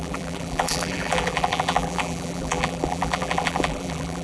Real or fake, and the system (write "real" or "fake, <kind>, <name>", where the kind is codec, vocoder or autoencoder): fake, vocoder, BigVGAN v2